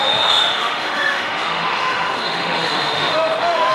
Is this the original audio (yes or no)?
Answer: no